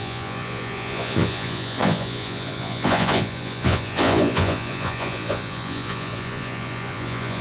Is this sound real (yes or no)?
no